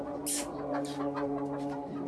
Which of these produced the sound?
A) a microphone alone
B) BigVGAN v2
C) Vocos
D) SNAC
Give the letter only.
A